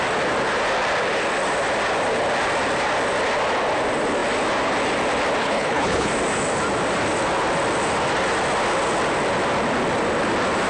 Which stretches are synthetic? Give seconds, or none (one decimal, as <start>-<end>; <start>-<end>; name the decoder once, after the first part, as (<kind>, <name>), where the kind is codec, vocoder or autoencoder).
5.4-6.1 (codec, HILCodec)